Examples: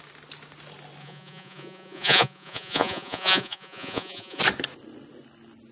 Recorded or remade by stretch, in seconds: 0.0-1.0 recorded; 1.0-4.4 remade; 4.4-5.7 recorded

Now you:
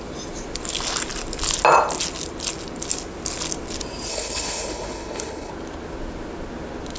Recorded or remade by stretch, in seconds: 0.0-4.1 recorded; 4.1-5.5 remade; 5.5-7.0 recorded

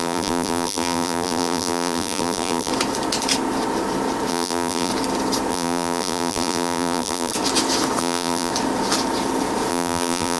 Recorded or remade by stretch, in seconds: 0.0-2.7 remade; 2.7-4.3 recorded; 4.3-4.9 remade; 4.9-5.5 recorded; 5.5-7.3 remade; 7.3-8.0 recorded; 8.0-8.5 remade; 8.5-9.7 recorded; 9.7-10.4 remade

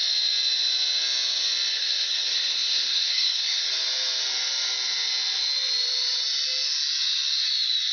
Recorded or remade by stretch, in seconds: 0.0-1.7 recorded; 1.7-3.7 remade; 3.7-7.9 recorded

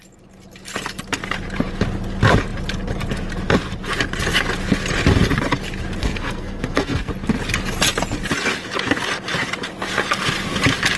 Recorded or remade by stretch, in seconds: 0.0-6.0 recorded; 6.0-7.1 remade; 7.1-11.0 recorded

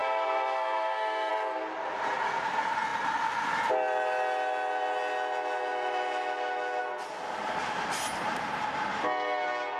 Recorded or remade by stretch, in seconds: 0.0-1.3 remade; 1.3-9.8 recorded